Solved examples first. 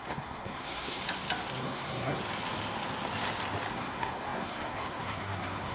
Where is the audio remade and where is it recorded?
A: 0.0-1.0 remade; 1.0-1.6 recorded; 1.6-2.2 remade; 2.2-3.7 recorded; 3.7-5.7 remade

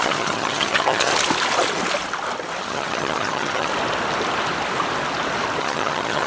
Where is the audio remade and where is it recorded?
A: 0.0-1.1 remade; 1.1-2.6 recorded; 2.6-3.7 remade; 3.7-5.6 recorded; 5.6-6.3 remade

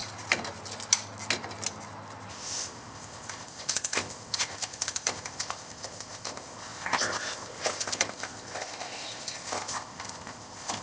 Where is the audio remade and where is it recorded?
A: 0.0-2.3 recorded; 2.3-10.8 remade

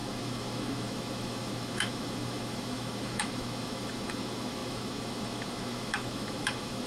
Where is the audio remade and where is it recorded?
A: 0.0-6.9 remade